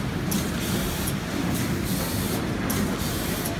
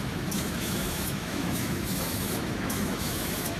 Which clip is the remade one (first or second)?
second